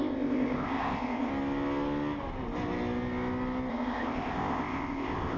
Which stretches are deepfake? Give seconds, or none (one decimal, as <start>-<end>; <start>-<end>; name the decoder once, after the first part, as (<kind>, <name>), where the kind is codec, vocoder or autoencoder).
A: 0.0-1.3 (codec, ZipCodec); 3.7-5.4